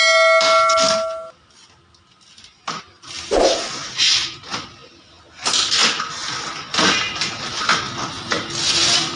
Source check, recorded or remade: recorded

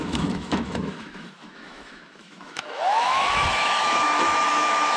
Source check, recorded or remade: remade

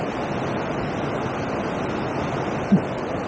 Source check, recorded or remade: recorded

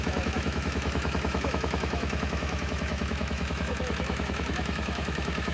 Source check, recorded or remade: remade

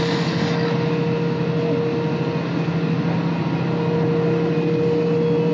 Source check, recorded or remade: recorded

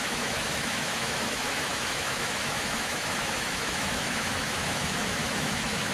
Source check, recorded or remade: remade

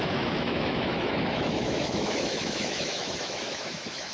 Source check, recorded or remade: remade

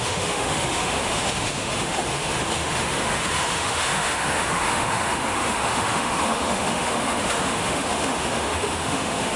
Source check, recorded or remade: remade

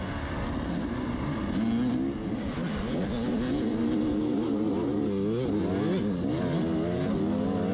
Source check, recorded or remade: recorded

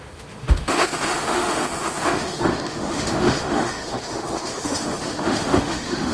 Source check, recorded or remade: remade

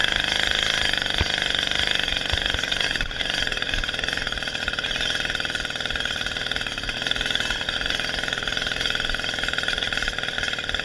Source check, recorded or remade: recorded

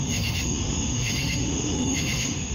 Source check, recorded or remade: remade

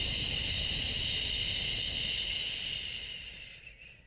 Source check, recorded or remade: recorded